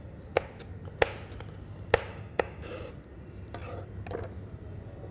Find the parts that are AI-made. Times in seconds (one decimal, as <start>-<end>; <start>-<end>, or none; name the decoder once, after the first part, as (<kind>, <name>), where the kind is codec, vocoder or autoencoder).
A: 2.1-2.9 (codec, DAC)